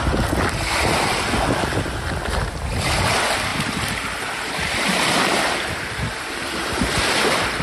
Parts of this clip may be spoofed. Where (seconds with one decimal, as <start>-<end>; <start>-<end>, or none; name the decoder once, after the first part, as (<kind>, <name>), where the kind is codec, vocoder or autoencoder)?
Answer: 3.5-7.1 (vocoder, BigVGAN v2)